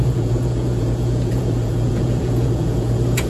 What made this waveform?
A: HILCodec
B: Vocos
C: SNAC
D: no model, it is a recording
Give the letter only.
B